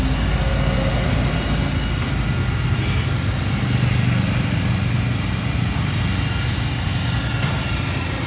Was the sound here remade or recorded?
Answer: recorded